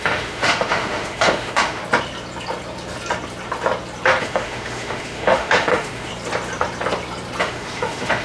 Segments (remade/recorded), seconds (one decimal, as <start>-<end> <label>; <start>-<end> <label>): 0.0-1.8 remade; 1.8-4.2 recorded; 4.2-6.1 remade; 6.1-7.4 recorded; 7.4-8.2 remade